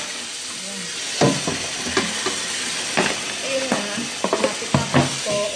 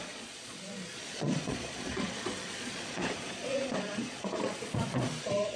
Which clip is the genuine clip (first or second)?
first